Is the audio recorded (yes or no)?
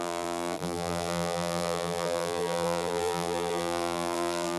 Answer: no